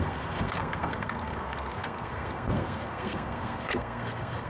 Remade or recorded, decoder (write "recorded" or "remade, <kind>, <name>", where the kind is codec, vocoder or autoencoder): remade, codec, SNAC